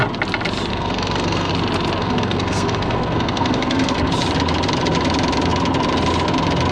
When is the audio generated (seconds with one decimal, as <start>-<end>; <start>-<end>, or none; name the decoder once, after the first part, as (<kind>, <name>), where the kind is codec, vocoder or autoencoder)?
0.7-1.5 (codec, SNAC); 2.0-4.1